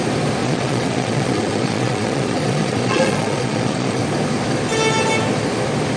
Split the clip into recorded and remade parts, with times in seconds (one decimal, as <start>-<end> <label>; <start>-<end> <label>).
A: 0.0-0.4 recorded; 0.4-4.0 remade; 4.0-6.0 recorded